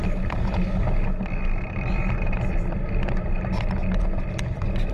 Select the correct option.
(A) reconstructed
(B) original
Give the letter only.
B